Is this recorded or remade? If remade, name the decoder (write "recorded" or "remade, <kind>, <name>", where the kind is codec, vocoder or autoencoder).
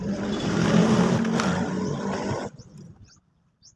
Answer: recorded